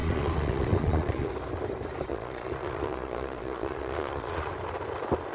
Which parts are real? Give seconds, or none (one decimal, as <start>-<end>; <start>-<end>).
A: 1.3-2.1; 4.5-5.3